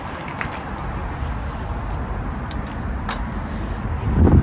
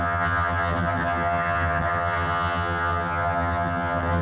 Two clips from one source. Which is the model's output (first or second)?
second